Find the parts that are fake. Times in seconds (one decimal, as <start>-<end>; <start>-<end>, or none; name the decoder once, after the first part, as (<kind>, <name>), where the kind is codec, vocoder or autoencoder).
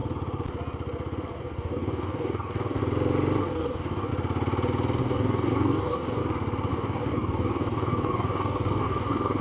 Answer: 1.4-2.8 (codec, DAC); 3.4-4.1; 5.0-6.2; 6.7-9.4